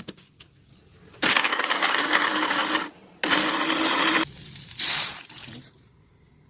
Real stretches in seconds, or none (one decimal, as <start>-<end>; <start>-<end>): 0.7-1.3; 2.6-6.5